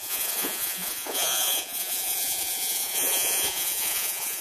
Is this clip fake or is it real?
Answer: fake